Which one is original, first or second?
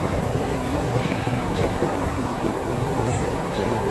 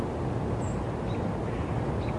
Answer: second